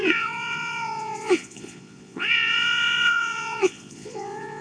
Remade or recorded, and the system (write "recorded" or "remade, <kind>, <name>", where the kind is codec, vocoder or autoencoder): remade, vocoder, Vocos